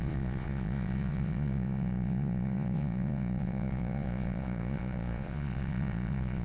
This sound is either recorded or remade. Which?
remade